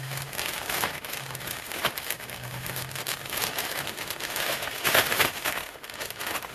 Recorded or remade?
remade